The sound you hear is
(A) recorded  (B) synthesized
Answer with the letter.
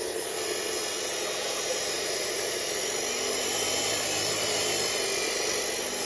A